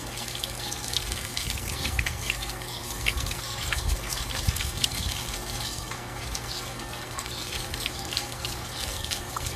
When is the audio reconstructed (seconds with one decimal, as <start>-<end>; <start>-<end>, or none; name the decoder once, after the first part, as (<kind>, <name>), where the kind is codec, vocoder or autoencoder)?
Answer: 0.0-9.6 (codec, SNAC)